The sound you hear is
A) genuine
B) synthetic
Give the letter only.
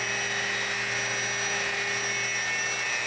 A